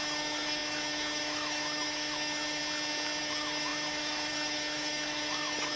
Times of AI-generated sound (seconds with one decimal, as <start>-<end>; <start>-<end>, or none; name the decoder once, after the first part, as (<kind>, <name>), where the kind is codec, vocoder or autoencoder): 0.0-2.6 (autoencoder, DAC-VAE); 3.2-5.8